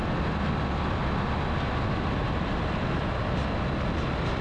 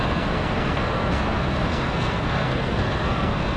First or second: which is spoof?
second